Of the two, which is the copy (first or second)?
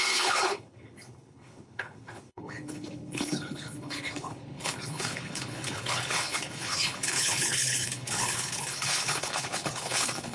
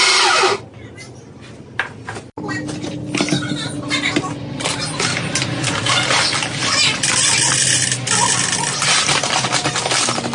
first